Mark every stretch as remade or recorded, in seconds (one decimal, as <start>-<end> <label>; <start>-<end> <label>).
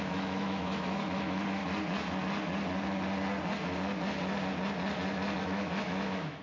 0.0-1.6 remade; 1.6-5.4 recorded; 5.4-6.4 remade